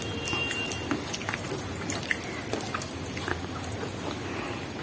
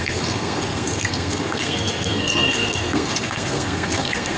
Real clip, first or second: first